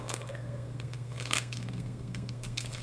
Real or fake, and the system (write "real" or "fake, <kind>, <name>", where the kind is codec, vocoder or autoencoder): fake, codec, SNAC